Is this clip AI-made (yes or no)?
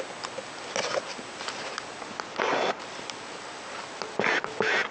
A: no